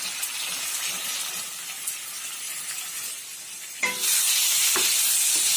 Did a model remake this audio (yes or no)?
no